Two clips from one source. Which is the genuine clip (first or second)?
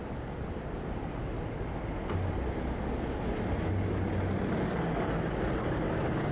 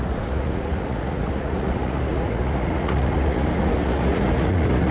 first